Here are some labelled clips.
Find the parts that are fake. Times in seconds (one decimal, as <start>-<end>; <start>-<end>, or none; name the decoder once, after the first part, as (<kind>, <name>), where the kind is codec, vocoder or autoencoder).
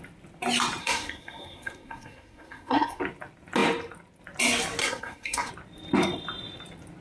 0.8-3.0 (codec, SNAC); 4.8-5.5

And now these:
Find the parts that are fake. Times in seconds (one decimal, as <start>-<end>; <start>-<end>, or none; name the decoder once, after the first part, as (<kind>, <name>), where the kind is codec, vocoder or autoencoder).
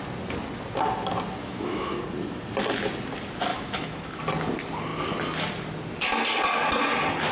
1.4-2.0 (autoencoder, DAC-VAE); 3.5-4.2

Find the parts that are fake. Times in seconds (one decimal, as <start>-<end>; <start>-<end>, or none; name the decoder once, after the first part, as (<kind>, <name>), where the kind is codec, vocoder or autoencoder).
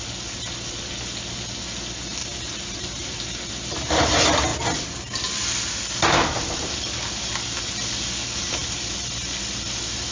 2.2-3.4 (vocoder, BigVGAN v2); 8.2-8.8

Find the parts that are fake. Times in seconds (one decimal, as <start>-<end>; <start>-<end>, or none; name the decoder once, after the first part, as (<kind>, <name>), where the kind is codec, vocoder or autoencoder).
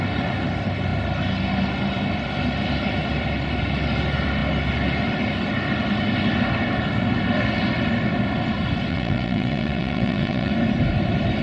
8.9-10.5 (vocoder, WaveNeXt)